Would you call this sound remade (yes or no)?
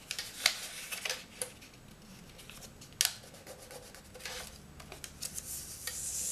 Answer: no